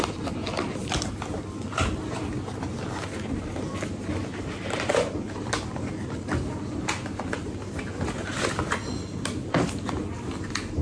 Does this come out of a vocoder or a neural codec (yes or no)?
no